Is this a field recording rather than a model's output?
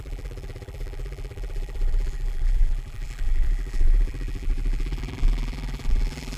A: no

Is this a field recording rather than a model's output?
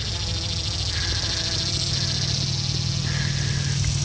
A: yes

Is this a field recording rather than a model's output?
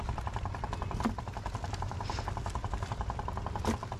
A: yes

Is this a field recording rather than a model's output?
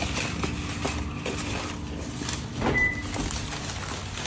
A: yes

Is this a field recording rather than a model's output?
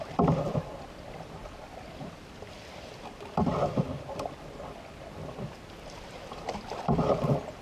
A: no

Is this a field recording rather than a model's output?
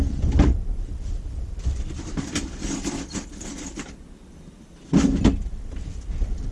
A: no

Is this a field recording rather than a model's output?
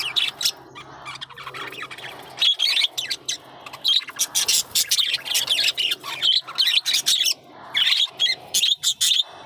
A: yes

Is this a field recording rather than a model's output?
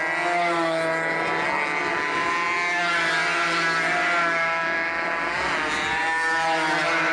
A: yes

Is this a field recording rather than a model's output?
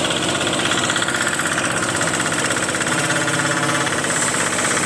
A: yes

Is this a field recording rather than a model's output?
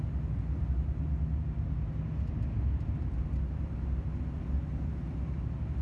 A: yes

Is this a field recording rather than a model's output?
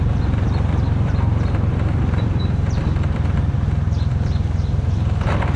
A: no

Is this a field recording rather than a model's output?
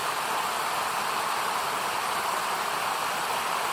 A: yes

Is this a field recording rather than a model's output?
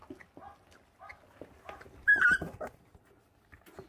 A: yes